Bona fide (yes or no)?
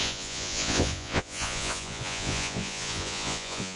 no